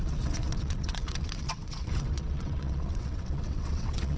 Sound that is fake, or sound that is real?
fake